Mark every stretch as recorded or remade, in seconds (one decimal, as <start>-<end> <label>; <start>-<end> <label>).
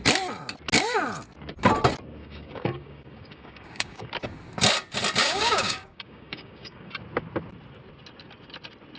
0.0-2.2 recorded; 2.2-4.1 remade; 4.1-5.2 recorded; 5.2-6.9 remade; 6.9-9.0 recorded